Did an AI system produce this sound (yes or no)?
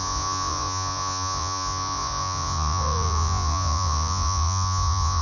yes